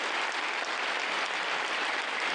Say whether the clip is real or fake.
real